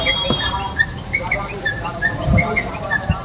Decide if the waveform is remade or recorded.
remade